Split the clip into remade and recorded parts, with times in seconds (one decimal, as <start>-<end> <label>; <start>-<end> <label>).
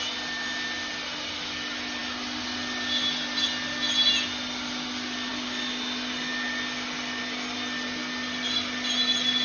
0.0-9.4 recorded